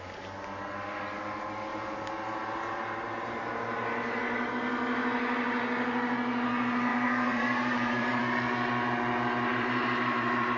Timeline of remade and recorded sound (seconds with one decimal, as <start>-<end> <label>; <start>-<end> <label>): 0.0-1.7 recorded; 1.7-4.5 remade; 4.5-6.9 recorded; 6.9-8.2 remade; 8.2-9.5 recorded; 9.5-10.6 remade